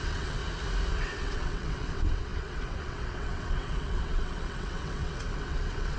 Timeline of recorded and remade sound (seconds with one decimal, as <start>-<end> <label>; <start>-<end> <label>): 0.0-0.4 remade; 0.4-0.9 recorded; 0.9-6.0 remade